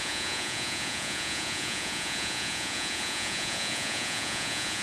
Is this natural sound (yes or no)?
no